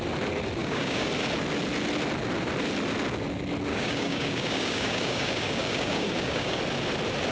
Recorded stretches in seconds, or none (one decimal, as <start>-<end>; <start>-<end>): 0.0-0.6; 1.1-3.7; 6.6-7.3